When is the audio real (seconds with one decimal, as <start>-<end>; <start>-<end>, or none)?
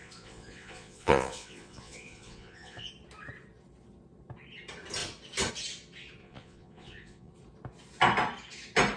2.9-6.2; 7.3-9.0